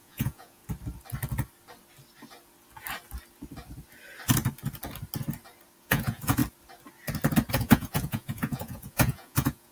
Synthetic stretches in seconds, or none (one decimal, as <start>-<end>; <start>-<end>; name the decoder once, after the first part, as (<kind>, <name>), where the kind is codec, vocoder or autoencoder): 0.0-0.6 (vocoder, Vocos); 5.8-6.4; 7.5-9.7